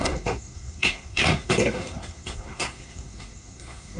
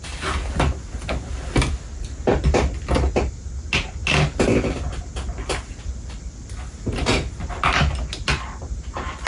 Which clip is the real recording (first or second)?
second